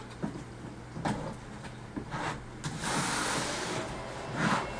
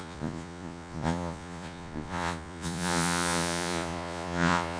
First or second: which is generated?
second